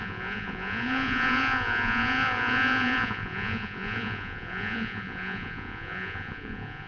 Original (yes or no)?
no